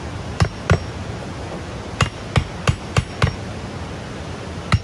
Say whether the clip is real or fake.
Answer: real